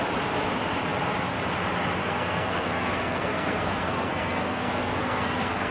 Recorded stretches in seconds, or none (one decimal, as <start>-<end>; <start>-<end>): 0.0-2.0